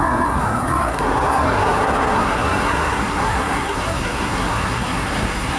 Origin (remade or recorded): remade